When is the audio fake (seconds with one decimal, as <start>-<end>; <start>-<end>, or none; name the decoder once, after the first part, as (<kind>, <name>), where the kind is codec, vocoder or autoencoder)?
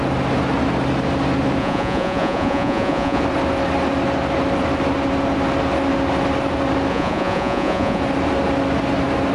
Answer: 1.6-3.2 (vocoder, Vocos); 6.9-8.0